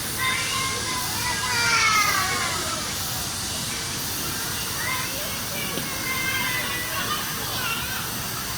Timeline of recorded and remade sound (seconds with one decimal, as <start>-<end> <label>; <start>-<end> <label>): 0.0-2.0 recorded; 2.0-5.6 remade; 5.6-8.6 recorded